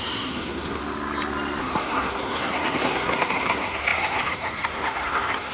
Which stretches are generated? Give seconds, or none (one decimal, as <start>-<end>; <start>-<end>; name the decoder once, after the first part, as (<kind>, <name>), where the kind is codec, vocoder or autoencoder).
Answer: 0.0-0.8 (codec, SNAC); 1.6-5.5

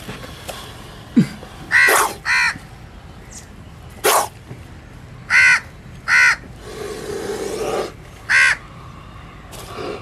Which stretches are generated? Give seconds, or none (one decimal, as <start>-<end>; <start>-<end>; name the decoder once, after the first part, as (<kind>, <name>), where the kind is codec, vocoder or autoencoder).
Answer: none

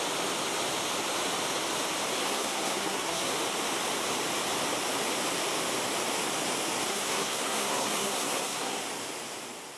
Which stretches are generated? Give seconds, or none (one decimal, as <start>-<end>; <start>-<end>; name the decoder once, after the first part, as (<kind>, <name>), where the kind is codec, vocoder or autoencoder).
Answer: 2.2-3.3 (codec, SNAC); 6.9-8.8

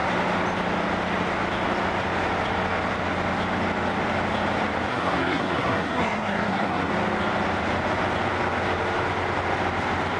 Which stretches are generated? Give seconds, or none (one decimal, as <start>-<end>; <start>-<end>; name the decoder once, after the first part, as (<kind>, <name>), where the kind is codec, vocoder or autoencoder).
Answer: 4.9-6.9 (codec, SNAC)

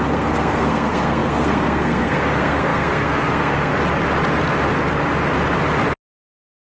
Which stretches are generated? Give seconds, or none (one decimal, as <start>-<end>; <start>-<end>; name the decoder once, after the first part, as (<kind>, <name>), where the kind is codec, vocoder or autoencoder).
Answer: 0.0-3.7 (codec, SNAC)

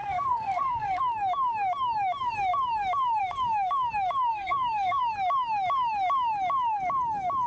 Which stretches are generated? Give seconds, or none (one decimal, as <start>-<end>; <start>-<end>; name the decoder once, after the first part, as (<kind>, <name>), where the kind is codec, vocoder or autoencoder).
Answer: 0.0-1.0 (codec, SNAC); 4.3-5.0

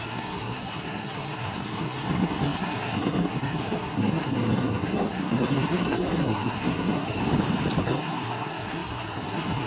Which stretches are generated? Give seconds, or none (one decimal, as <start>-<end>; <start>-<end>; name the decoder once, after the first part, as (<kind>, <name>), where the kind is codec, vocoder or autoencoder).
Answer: 0.0-7.2 (codec, SNAC); 7.8-9.7

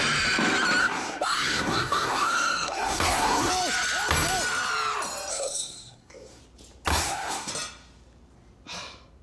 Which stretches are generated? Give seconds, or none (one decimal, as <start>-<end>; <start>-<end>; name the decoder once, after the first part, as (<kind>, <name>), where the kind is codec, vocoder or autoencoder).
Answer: 0.8-3.5 (codec, SNAC); 5.3-6.4; 6.9-7.5